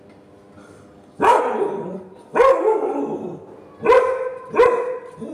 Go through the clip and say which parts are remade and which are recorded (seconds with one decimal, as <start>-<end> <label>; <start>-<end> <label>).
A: 0.0-0.6 recorded; 0.6-1.4 remade; 1.4-2.2 recorded; 2.2-3.0 remade; 3.0-5.3 recorded